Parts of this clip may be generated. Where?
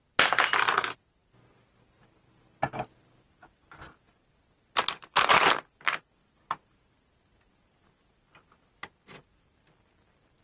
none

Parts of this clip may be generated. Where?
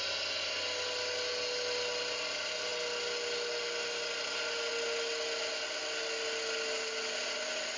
none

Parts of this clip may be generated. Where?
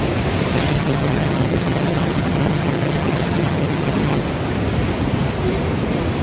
0.5-4.2 (vocoder, HiFi-GAN)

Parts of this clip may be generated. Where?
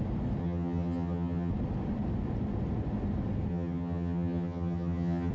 0.4-1.5 (vocoder, HiFi-GAN); 3.5-5.3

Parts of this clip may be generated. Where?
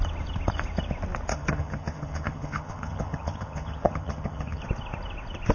1.3-4.6 (vocoder, HiFi-GAN)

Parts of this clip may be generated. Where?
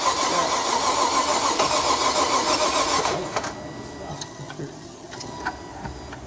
4.1-5.4 (vocoder, HiFi-GAN)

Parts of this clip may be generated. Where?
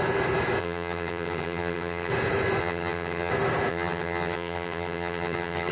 0.6-2.1 (vocoder, HiFi-GAN); 2.6-3.3; 3.7-5.7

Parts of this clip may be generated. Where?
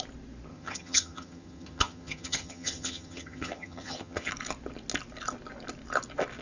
0.5-4.3 (vocoder, HiFi-GAN)